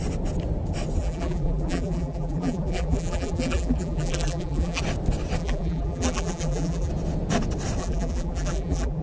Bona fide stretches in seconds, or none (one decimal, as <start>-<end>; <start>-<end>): 0.0-1.0; 4.8-5.4; 6.9-7.8